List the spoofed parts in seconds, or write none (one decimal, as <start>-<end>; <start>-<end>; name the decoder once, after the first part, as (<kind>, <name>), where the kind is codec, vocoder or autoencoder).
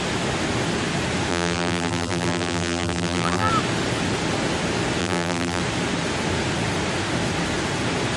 1.3-3.5 (vocoder, BigVGAN v2); 5.0-5.6